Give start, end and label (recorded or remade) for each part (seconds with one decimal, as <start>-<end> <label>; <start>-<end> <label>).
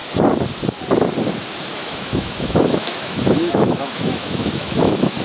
0.0-1.8 recorded; 1.8-5.2 remade